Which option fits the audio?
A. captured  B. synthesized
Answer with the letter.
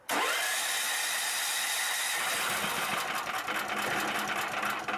A